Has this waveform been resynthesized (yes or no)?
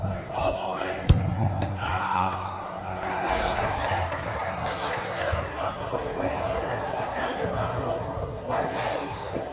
yes